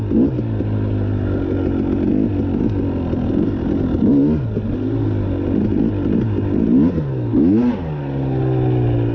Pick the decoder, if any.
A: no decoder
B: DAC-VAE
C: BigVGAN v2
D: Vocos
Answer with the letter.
A